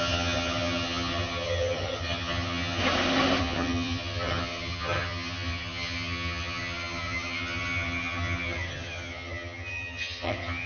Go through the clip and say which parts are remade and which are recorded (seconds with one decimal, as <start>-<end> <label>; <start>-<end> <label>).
0.0-2.8 remade; 2.8-3.4 recorded; 3.4-10.7 remade